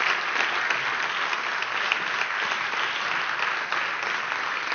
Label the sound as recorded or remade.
recorded